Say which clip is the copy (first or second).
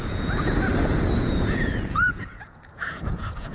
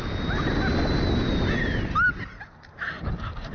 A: first